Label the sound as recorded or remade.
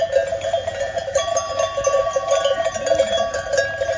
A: recorded